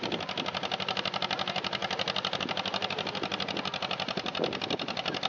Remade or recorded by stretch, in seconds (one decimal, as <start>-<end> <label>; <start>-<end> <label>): 0.0-5.3 recorded